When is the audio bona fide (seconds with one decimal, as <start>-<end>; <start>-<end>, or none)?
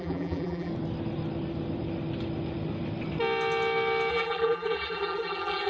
0.7-4.1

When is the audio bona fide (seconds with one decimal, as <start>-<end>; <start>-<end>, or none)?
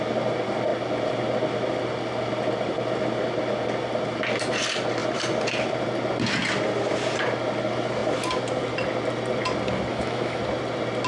0.0-9.9; 10.4-11.1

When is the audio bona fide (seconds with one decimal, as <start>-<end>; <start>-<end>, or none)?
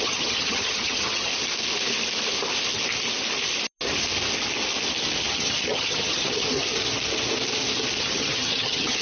1.3-5.3; 6.7-8.0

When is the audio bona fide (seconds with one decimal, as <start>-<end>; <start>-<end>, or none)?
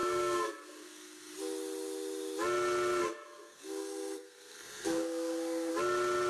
1.3-3.0; 5.7-6.3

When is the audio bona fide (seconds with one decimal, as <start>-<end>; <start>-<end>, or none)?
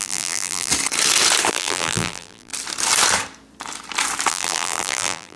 0.7-1.5; 2.5-4.3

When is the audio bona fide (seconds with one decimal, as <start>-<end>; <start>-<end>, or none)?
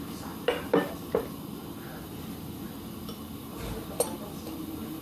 0.0-5.0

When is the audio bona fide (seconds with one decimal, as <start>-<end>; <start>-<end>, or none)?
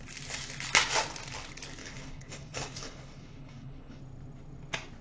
0.0-1.8; 4.0-5.0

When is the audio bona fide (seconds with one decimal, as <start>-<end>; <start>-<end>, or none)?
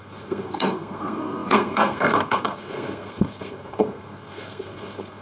none